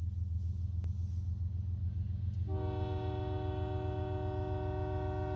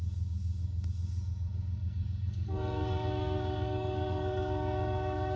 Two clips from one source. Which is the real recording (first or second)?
first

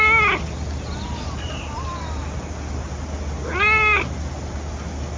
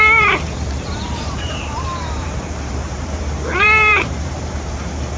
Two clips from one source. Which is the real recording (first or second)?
first